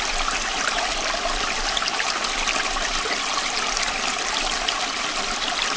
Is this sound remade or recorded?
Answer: recorded